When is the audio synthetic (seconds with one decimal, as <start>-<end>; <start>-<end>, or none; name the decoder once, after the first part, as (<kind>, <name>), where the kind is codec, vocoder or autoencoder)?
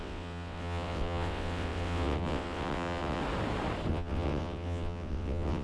0.0-3.2 (vocoder, WaveNeXt); 3.9-5.6